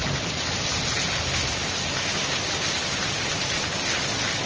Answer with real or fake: real